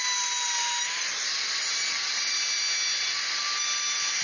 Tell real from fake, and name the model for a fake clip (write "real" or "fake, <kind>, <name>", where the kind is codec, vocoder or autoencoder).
real